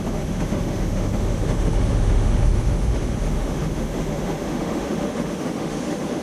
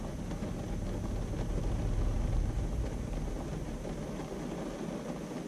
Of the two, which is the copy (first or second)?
first